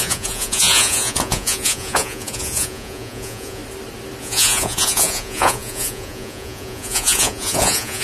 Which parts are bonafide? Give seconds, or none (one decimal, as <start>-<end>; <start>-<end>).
3.6-4.2